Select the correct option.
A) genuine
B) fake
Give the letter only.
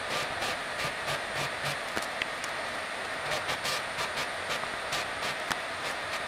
A